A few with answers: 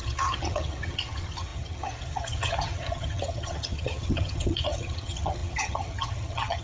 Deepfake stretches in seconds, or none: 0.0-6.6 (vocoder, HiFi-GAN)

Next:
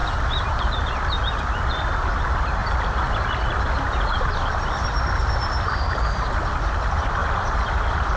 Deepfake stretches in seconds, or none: 0.0-0.5 (vocoder, BigVGAN v2); 2.6-6.3; 7.2-8.2

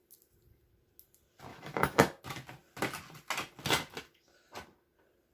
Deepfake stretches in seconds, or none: 1.5-2.2 (autoencoder, DAC-VAE)

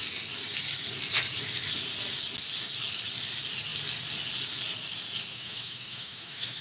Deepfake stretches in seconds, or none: 5.3-6.6 (autoencoder, DAC-VAE)

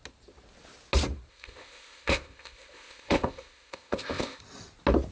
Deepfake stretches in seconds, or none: 1.3-4.4 (codec, ZipCodec)

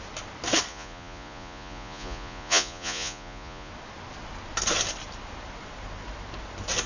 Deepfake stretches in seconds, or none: 0.7-3.7 (vocoder, Vocos)

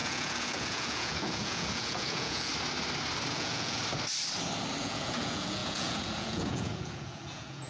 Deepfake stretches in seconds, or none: 0.0-2.5 (vocoder, Vocos); 3.3-3.8; 4.8-7.7

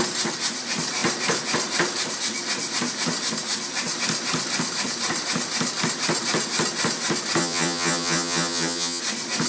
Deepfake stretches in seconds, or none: 7.4-9.0 (vocoder, HiFi-GAN)